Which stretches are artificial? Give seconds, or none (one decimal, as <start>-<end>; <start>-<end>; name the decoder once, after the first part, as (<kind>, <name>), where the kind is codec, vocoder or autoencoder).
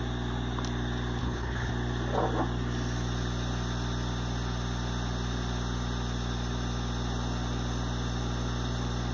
1.2-1.7 (codec, HILCodec)